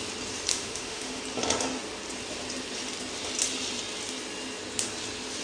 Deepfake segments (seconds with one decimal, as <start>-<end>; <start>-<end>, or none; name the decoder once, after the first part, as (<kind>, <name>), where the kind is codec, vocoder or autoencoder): 0.5-1.2 (autoencoder, DAC-VAE)